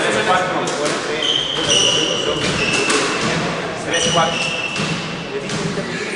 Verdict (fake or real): real